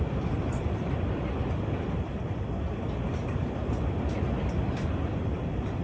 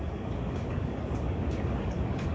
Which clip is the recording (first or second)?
first